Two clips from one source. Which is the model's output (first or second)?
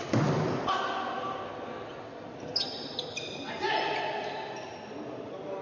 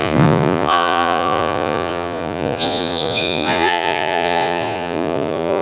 second